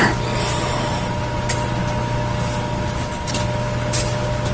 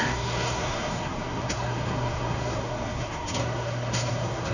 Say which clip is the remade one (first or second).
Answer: second